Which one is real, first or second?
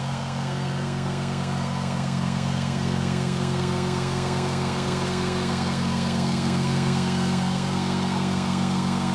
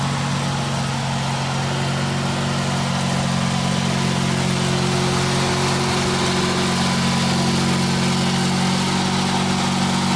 second